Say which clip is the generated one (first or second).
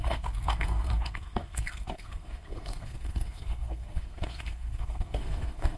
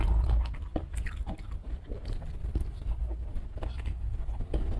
first